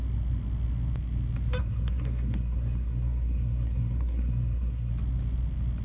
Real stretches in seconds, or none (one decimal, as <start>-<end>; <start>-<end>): 0.0-1.6; 4.9-5.8